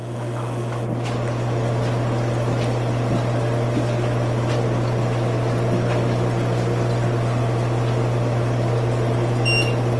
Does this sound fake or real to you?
real